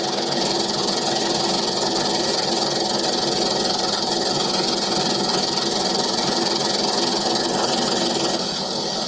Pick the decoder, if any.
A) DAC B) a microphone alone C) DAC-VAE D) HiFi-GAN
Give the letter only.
B